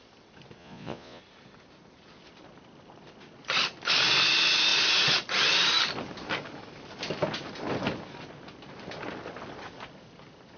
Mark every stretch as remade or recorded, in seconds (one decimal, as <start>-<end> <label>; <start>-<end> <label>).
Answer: 0.0-0.6 recorded; 0.6-1.2 remade; 1.2-10.6 recorded